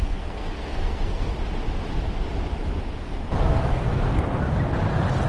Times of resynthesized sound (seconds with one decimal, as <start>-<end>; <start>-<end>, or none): 0.0-1.3; 3.6-4.4